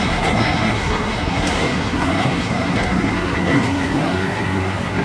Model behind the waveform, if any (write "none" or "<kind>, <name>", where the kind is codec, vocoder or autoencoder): codec, SNAC